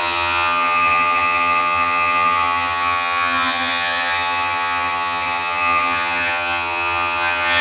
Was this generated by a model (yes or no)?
yes